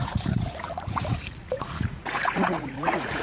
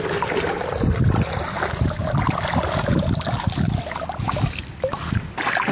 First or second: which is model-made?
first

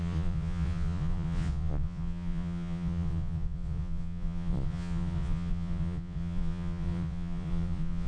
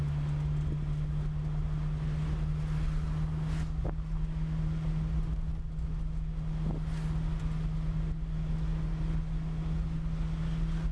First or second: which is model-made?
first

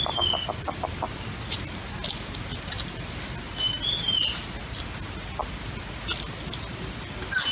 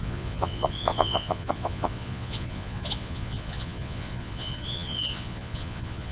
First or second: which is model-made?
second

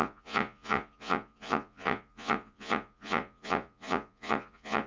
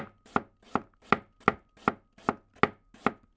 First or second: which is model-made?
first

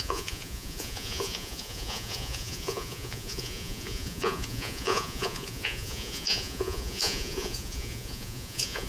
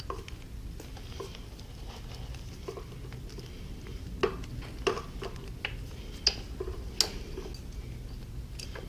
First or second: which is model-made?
first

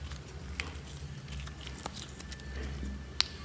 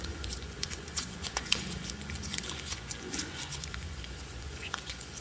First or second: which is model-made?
second